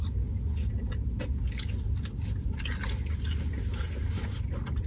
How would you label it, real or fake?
real